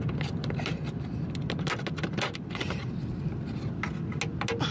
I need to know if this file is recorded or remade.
recorded